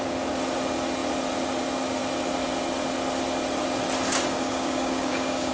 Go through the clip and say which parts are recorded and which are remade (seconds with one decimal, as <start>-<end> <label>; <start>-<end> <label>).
0.0-4.1 recorded; 4.1-5.5 remade